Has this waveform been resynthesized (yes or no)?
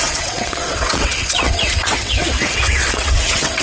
yes